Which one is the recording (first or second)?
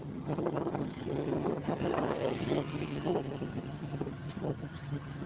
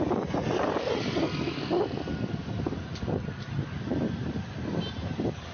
second